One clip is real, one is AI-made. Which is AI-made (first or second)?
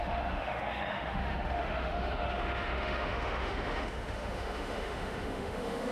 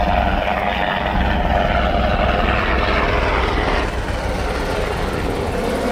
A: first